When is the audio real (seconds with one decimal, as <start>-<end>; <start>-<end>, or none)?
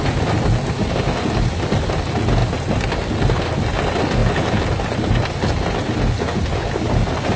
0.0-7.4